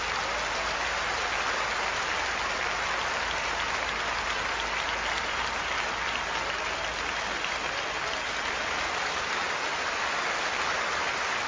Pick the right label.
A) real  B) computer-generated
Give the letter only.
A